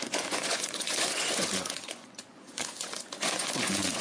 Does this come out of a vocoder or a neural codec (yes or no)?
yes